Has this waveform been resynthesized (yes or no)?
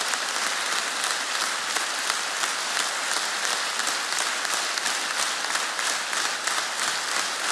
no